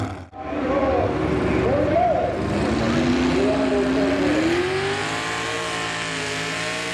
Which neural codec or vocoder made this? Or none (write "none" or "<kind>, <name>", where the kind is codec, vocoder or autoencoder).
none